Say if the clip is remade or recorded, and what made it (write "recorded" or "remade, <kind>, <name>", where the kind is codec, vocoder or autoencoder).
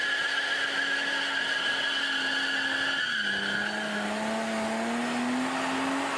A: recorded